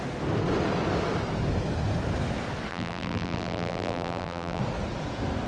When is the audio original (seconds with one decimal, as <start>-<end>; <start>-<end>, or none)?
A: 0.0-2.7; 4.6-5.5